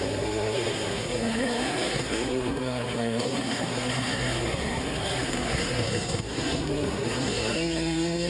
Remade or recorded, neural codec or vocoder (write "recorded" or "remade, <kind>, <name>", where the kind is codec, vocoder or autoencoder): remade, codec, SNAC